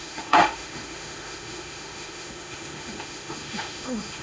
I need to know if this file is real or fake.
fake